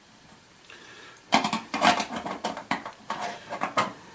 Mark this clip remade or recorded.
remade